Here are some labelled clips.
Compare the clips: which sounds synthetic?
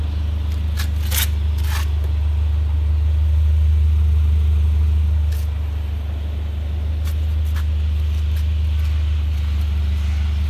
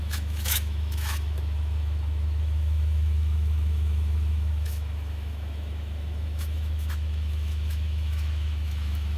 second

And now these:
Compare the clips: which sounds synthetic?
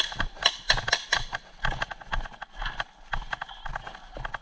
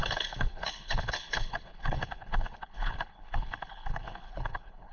second